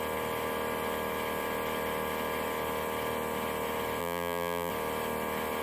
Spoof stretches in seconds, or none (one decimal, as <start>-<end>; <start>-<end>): 4.0-4.7